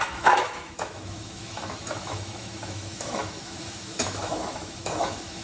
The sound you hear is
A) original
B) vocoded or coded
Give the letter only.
B